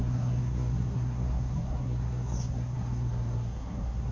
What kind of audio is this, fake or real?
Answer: fake